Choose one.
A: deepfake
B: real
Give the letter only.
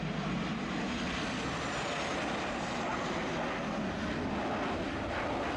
B